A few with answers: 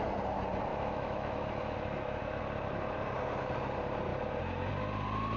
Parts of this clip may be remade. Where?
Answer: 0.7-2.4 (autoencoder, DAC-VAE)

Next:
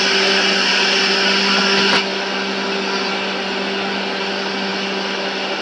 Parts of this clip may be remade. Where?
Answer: none

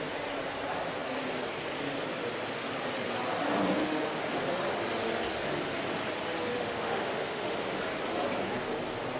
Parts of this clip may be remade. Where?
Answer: 3.8-4.3 (autoencoder, DAC-VAE); 6.5-7.8

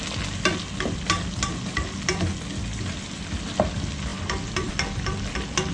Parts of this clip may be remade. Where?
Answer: none

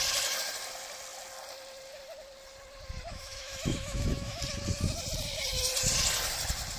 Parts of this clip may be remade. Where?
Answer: 3.1-4.4 (autoencoder, DAC-VAE)

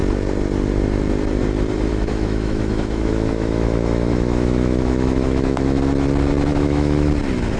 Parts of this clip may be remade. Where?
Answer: 1.9-5.8 (autoencoder, DAC-VAE); 6.5-7.1